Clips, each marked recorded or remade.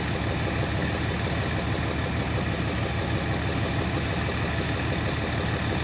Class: recorded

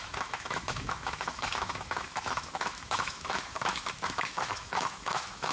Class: remade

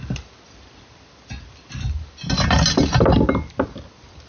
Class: recorded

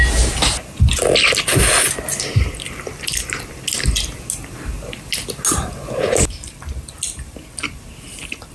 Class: recorded